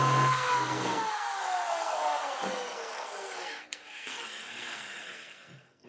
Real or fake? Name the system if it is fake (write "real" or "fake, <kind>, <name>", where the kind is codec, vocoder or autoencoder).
fake, codec, SNAC